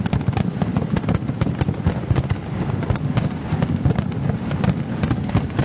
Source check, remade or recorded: recorded